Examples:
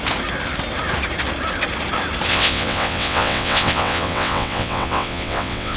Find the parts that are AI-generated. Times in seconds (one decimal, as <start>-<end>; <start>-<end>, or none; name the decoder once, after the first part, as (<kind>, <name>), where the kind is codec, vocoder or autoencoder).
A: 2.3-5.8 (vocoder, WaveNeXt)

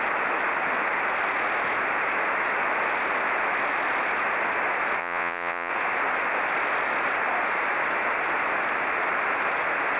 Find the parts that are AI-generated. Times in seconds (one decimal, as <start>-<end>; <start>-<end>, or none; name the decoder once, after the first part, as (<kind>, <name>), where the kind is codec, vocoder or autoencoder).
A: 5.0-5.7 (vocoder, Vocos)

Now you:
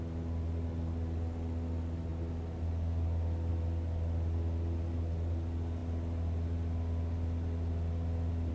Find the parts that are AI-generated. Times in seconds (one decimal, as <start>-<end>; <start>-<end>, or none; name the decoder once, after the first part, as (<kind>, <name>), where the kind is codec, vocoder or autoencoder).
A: none

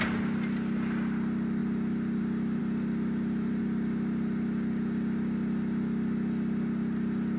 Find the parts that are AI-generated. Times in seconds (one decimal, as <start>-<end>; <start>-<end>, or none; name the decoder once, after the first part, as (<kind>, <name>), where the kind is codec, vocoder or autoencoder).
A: 2.6-3.6 (vocoder, BigVGAN v2)

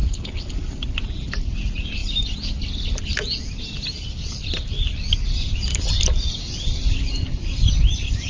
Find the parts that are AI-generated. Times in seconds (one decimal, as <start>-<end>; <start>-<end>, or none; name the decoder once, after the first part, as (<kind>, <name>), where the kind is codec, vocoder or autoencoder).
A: 0.0-0.5 (codec, HILCodec)

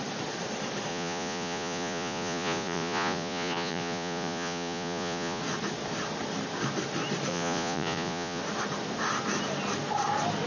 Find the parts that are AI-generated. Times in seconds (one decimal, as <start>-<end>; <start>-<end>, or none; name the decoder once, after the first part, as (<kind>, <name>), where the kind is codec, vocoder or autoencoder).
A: 0.9-5.4 (vocoder, Vocos); 7.3-8.4

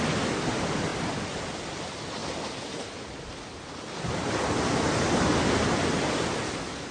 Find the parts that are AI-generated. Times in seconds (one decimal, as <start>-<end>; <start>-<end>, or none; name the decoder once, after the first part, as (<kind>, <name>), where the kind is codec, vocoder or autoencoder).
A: none

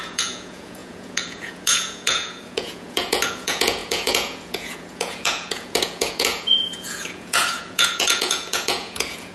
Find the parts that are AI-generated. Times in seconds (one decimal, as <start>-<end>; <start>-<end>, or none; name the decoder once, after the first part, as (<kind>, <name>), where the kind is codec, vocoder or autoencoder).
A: 0.0-9.3 (vocoder, Vocos)